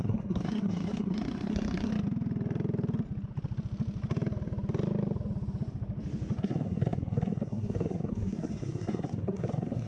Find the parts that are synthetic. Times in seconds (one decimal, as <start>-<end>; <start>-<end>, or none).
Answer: 0.0-1.9; 6.4-9.9